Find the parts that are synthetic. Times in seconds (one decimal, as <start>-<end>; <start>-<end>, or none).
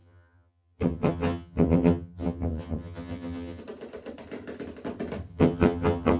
0.0-3.6; 5.3-6.2